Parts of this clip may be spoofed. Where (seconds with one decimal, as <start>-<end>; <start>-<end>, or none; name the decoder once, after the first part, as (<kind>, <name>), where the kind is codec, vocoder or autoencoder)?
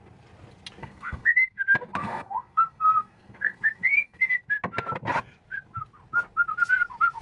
0.8-1.6 (codec, SNAC); 2.0-4.3